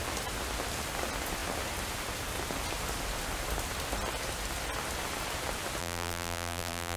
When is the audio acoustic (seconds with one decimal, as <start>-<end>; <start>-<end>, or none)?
0.0-5.8